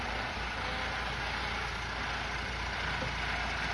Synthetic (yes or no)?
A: no